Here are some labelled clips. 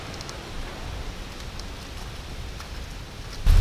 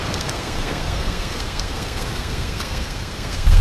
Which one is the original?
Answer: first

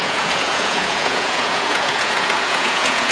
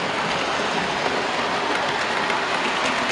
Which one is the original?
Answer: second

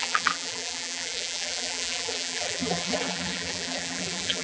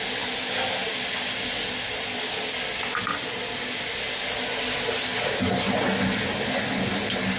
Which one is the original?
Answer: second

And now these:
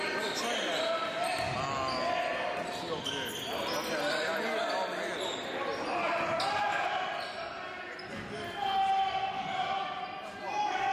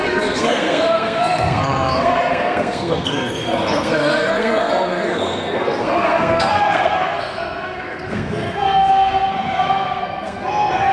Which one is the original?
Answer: first